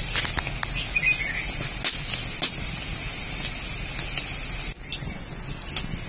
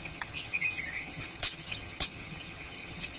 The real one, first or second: first